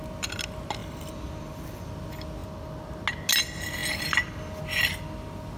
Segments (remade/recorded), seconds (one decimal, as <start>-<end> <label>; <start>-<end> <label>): 0.0-0.8 recorded; 0.8-1.9 remade; 1.9-3.8 recorded; 3.8-4.6 remade; 4.6-5.6 recorded